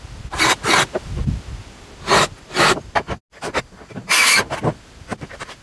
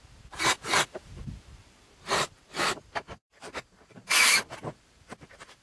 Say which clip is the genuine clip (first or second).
first